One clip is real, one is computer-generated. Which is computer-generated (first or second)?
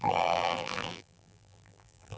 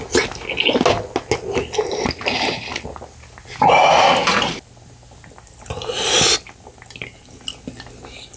first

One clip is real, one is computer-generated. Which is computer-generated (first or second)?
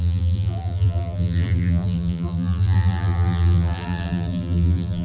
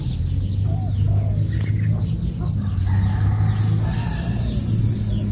first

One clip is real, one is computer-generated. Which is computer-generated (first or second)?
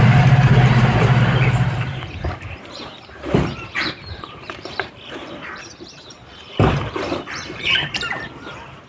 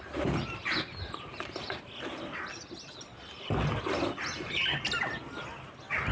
first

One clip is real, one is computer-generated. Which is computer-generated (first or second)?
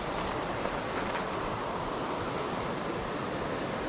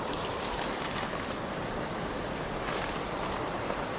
second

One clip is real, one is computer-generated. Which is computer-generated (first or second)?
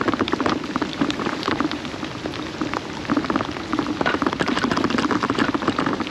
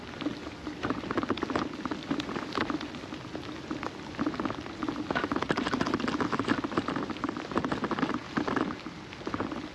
first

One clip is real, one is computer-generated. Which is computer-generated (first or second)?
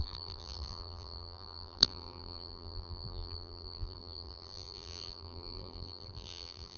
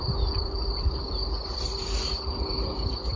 first